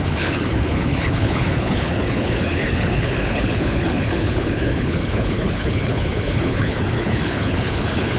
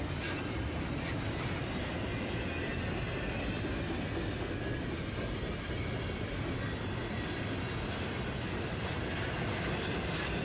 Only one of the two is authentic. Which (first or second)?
second